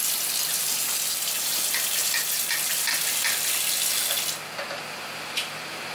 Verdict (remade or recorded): recorded